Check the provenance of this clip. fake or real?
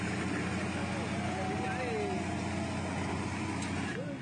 real